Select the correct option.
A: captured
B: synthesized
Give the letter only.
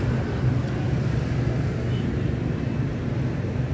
A